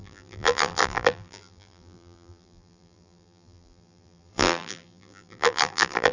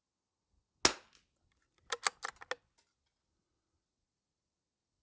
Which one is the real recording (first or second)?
second